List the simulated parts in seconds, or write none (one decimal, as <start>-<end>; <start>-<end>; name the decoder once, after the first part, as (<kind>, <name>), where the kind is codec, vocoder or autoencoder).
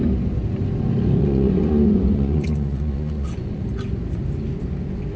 1.2-3.6 (vocoder, Vocos)